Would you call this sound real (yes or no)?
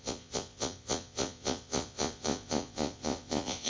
no